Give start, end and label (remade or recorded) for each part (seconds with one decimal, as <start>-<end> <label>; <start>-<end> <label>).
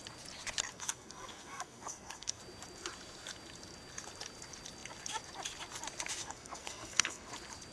0.0-0.7 recorded; 0.7-2.4 remade; 2.4-6.2 recorded; 6.2-7.3 remade; 7.3-7.7 recorded